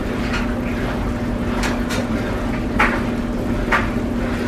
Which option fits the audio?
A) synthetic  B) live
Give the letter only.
B